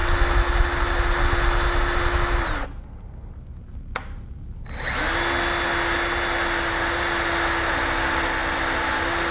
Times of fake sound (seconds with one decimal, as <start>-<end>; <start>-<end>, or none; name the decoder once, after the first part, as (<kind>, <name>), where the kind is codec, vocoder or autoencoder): none